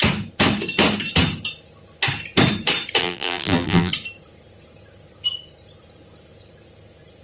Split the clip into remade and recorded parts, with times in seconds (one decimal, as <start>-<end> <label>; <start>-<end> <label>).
0.0-3.0 recorded; 3.0-3.9 remade; 3.9-7.2 recorded